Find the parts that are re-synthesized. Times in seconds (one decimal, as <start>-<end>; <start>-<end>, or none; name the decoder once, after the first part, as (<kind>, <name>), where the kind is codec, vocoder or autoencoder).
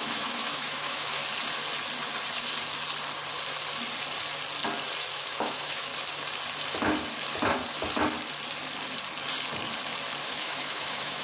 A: 0.0-1.2 (autoencoder, DAC-VAE); 5.1-5.9; 10.2-11.2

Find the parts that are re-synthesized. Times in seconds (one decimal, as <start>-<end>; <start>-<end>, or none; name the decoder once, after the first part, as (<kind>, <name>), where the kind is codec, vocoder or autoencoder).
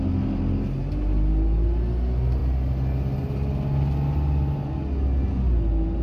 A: none